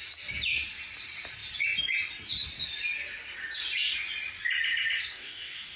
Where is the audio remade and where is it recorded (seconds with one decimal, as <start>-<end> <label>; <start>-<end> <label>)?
0.0-5.1 recorded; 5.1-5.8 remade